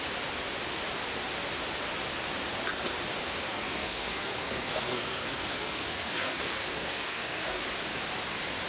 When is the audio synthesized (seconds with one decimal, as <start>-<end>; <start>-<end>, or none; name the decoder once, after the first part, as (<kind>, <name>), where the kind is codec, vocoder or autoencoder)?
3.5-7.6 (codec, SNAC)